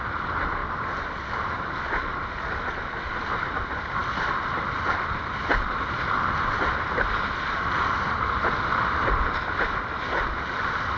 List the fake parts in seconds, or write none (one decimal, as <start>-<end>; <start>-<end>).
none